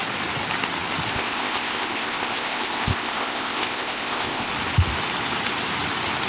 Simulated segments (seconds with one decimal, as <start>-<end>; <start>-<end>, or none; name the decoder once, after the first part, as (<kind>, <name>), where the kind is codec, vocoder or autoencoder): 1.1-4.5 (codec, ZipCodec)